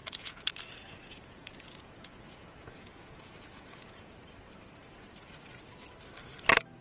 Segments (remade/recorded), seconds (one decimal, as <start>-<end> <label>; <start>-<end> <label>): 0.0-4.1 remade; 4.1-4.8 recorded; 4.8-5.3 remade; 5.3-6.8 recorded